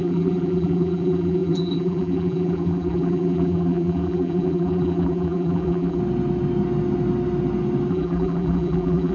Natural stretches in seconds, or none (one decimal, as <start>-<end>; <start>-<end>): 6.0-7.9